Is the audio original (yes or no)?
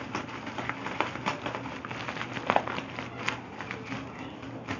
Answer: yes